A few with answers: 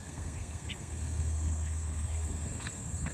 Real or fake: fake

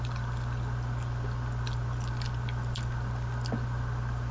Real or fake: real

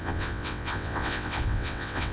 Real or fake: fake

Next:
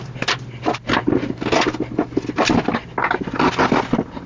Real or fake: real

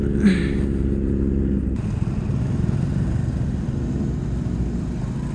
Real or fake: real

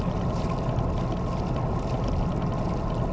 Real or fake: real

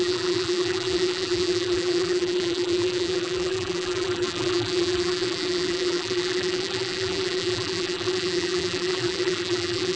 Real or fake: fake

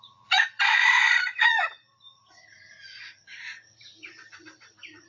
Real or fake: fake